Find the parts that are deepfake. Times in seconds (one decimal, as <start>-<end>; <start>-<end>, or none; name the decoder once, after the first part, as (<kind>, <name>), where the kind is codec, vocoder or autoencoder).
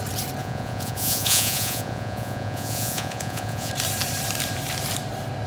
0.4-3.7 (vocoder, Vocos)